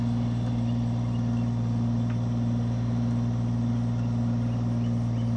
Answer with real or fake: real